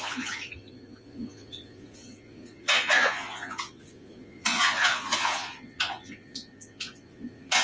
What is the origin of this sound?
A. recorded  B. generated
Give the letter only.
B